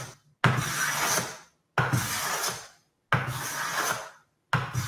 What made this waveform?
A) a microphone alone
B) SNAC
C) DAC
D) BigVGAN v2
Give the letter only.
A